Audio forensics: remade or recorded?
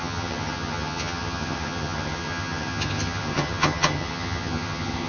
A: remade